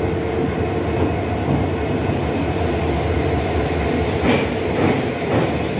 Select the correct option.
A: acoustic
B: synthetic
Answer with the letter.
A